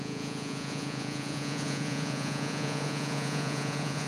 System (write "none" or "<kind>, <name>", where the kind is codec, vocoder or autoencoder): vocoder, Vocos